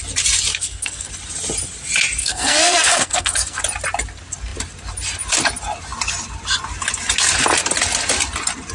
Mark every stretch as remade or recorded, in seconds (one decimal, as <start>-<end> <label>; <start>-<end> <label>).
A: 0.0-0.5 recorded; 0.5-1.1 remade; 1.1-2.2 recorded; 2.2-3.6 remade; 3.6-8.7 recorded